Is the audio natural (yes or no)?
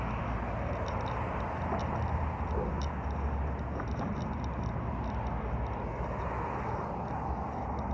yes